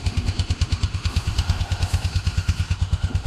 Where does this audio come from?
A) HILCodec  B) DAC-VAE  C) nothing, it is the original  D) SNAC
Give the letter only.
B